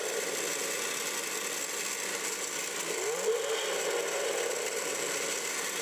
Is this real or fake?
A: real